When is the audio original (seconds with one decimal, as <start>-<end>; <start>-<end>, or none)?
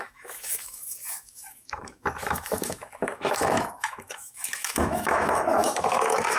none